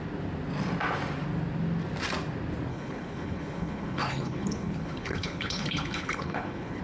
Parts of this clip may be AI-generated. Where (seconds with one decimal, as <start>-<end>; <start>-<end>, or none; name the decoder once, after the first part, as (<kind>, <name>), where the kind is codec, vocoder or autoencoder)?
2.7-6.8 (codec, HILCodec)